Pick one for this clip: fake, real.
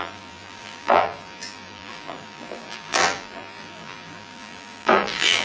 fake